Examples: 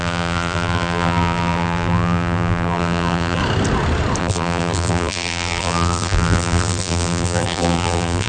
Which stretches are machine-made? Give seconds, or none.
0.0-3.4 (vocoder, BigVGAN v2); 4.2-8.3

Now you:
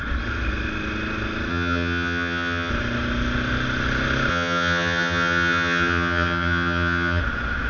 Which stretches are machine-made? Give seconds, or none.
1.5-2.7 (vocoder, HiFi-GAN); 4.3-7.2

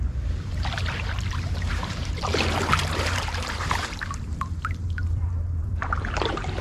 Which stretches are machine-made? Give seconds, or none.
0.0-6.6 (vocoder, BigVGAN v2)

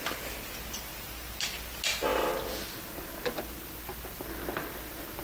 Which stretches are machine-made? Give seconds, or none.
none